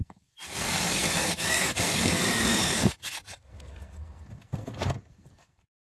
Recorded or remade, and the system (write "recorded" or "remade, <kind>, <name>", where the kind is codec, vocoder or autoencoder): remade, codec, SNAC